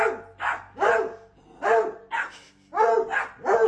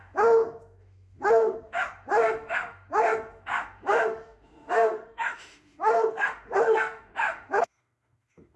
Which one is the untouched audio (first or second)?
first